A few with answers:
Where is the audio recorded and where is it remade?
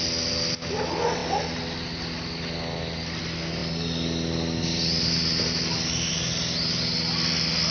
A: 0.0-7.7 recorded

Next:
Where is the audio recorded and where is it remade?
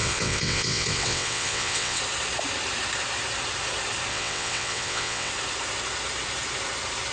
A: 0.0-2.0 remade; 2.0-4.1 recorded; 4.1-5.3 remade; 5.3-7.1 recorded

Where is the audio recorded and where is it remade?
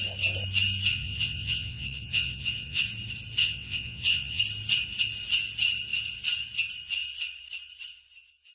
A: 0.0-0.9 recorded; 0.9-2.8 remade; 2.8-3.4 recorded; 3.4-4.4 remade; 4.4-8.5 recorded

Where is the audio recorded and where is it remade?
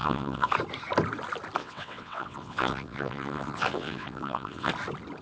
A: 0.0-0.5 remade; 0.5-1.6 recorded; 1.6-4.7 remade; 4.7-5.2 recorded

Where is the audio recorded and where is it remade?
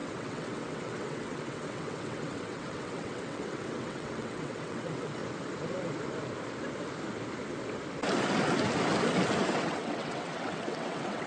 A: 0.0-5.2 remade; 5.2-9.4 recorded; 9.4-11.3 remade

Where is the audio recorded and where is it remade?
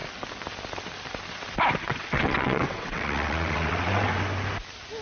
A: 0.0-1.8 recorded; 1.8-4.1 remade; 4.1-5.0 recorded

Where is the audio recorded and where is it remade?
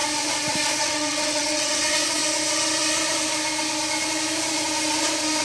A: 0.0-0.8 recorded; 0.8-2.2 remade; 2.2-5.4 recorded